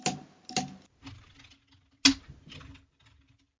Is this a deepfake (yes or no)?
no